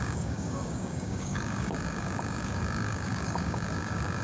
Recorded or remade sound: remade